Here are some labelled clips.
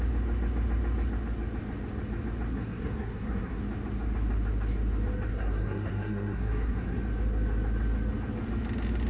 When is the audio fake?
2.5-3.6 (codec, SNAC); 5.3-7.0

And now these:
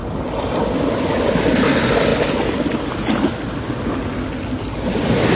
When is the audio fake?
none